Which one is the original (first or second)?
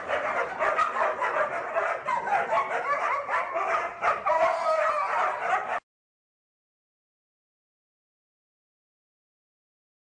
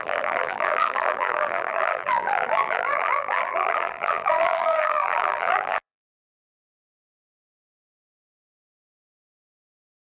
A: first